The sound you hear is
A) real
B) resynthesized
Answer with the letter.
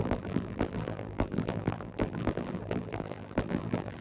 B